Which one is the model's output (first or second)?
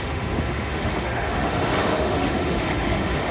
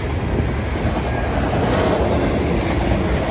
first